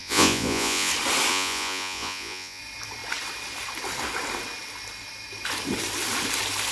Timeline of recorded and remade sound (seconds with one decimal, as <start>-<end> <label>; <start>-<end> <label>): 0.0-0.9 remade; 0.9-1.3 recorded; 1.3-2.6 remade; 2.6-6.7 recorded